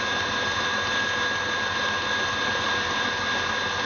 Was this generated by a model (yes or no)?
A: no